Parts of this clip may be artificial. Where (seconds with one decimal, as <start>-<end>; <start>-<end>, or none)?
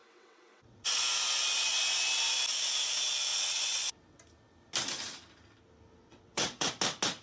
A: 0.0-1.0; 3.3-4.2; 6.0-6.7